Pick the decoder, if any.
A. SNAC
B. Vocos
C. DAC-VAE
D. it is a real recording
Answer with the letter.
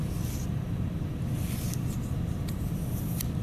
D